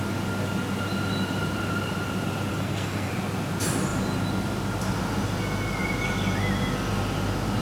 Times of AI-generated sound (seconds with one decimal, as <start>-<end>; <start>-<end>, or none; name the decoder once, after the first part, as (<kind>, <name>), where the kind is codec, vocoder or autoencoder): 2.5-3.1 (codec, SNAC)